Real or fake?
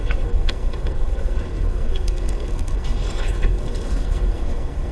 fake